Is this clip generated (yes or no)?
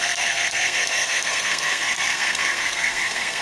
yes